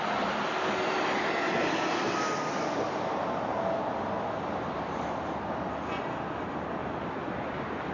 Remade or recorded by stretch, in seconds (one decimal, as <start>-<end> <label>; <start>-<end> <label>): 0.0-6.8 recorded; 6.8-7.9 remade

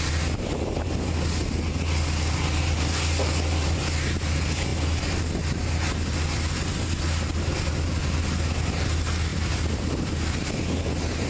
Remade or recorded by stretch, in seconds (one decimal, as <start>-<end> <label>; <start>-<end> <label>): 0.0-9.3 recorded; 9.3-10.1 remade; 10.1-11.3 recorded